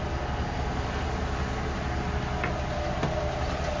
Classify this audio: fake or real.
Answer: real